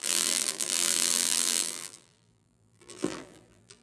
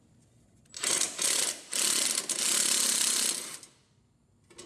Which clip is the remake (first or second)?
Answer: first